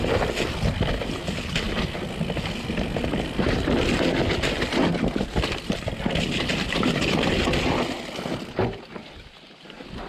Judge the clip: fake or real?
real